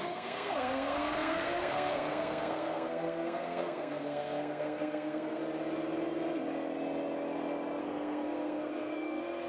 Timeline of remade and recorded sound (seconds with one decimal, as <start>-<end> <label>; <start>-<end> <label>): 0.0-5.4 remade; 5.4-7.8 recorded; 7.8-9.5 remade